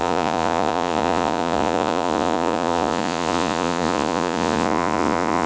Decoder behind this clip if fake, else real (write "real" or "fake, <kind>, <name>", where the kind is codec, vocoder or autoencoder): fake, vocoder, Vocos